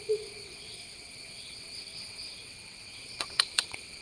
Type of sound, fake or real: fake